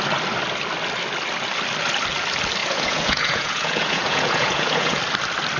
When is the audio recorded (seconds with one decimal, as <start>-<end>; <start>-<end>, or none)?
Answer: 0.0-2.6; 5.0-5.6